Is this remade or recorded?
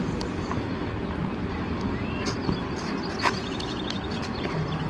recorded